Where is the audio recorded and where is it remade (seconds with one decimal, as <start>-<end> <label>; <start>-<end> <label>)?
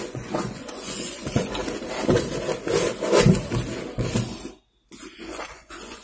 0.0-1.6 remade; 1.6-5.2 recorded; 5.2-6.0 remade